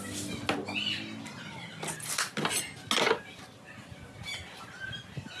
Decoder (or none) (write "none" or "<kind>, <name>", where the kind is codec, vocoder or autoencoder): none